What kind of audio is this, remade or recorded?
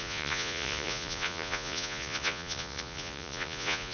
remade